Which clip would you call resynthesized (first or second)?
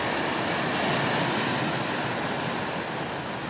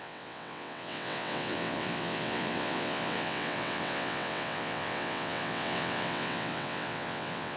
second